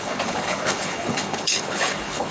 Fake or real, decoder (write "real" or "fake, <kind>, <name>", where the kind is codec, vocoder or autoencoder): fake, codec, HILCodec